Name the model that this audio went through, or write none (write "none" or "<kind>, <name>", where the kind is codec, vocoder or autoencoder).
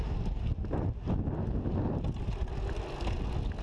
none